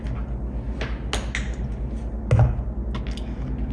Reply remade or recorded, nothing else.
recorded